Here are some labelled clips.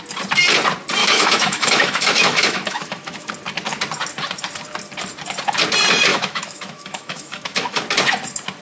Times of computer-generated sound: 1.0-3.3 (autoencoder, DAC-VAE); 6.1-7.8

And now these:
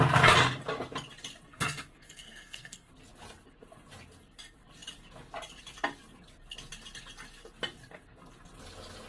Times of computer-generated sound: 1.5-2.9 (codec, SNAC)

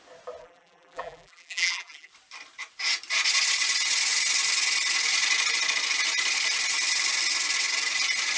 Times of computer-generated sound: 0.4-2.1 (vocoder, BigVGAN v2)

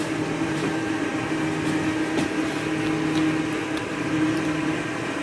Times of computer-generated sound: 0.0-1.1 (vocoder, BigVGAN v2); 4.0-5.2

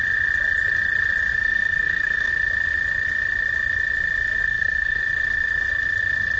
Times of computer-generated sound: 1.3-2.3 (codec, SNAC); 4.4-5.0

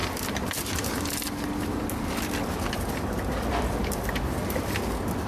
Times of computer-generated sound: none